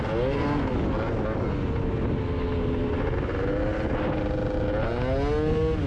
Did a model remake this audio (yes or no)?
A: no